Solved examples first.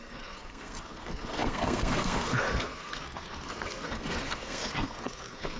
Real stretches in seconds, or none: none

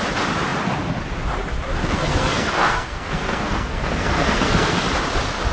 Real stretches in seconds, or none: 0.0-1.8; 4.8-5.5

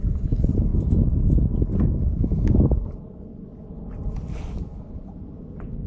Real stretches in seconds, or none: 0.0-5.9

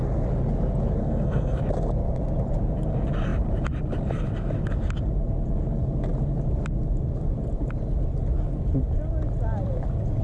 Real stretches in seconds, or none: 0.0-1.0; 1.6-10.2

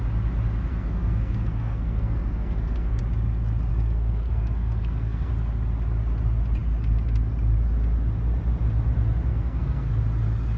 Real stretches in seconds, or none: 0.0-0.7; 3.0-3.7; 5.3-9.3; 9.9-10.6